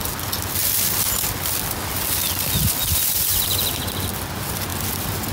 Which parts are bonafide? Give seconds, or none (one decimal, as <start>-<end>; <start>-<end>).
0.0-5.3